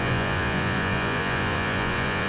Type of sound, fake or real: fake